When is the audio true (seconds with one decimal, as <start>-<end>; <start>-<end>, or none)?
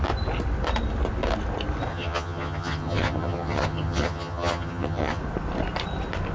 0.0-1.9; 5.2-6.3